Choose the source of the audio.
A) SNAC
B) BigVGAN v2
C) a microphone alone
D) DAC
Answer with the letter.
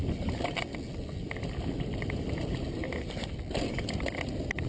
C